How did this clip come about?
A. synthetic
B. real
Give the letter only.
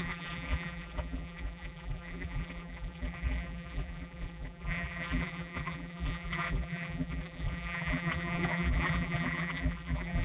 A